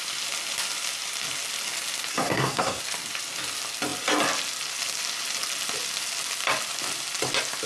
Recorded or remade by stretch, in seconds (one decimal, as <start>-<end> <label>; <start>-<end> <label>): 0.0-2.1 recorded; 2.1-2.8 remade; 2.8-7.7 recorded